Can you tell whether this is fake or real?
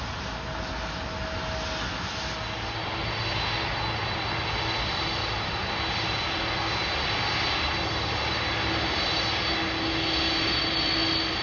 real